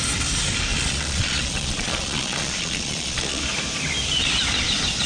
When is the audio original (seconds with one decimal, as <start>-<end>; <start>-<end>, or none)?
0.0-0.7; 3.4-5.1

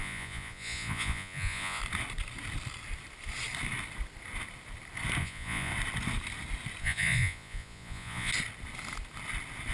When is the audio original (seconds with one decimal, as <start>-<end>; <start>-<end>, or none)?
1.8-5.2; 5.7-6.8; 8.3-9.7

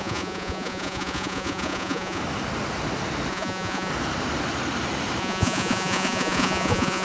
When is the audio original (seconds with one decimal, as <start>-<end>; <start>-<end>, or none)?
2.2-3.3; 3.9-5.2

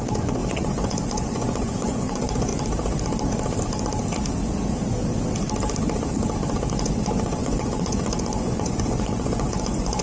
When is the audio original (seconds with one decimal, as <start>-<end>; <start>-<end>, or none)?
2.5-6.7

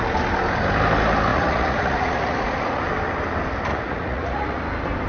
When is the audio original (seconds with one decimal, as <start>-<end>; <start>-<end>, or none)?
0.0-1.3; 2.8-3.7; 4.6-5.1